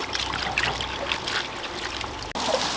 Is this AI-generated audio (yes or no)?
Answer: no